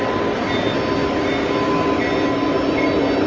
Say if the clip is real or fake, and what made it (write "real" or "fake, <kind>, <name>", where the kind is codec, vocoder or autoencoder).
real